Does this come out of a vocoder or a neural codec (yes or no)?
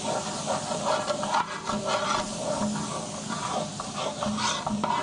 no